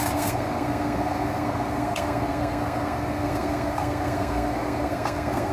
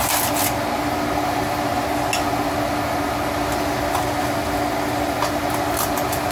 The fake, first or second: first